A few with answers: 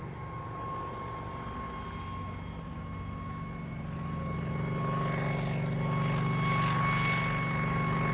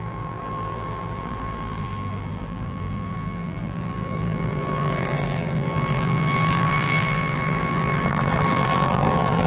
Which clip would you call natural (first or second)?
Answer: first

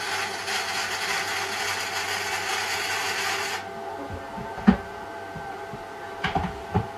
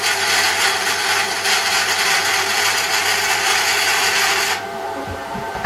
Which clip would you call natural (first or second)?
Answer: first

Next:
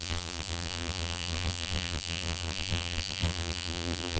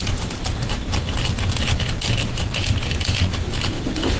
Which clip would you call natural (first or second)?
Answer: second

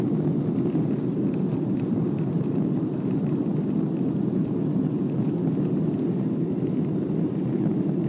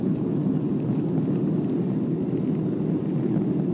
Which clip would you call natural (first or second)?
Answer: second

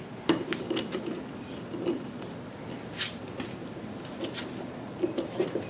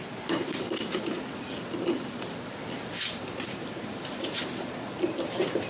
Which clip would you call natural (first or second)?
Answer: first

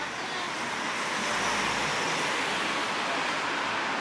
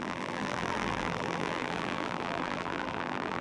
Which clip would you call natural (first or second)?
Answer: first